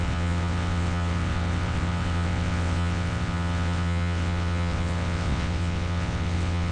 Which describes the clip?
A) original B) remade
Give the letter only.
B